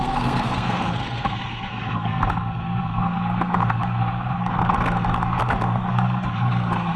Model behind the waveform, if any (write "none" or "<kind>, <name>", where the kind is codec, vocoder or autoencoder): codec, SNAC